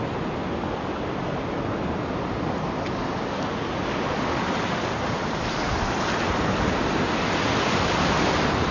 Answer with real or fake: real